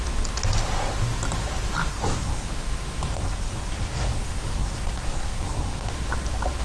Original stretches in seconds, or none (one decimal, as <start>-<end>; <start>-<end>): 0.0-1.9; 2.5-3.1; 5.9-6.6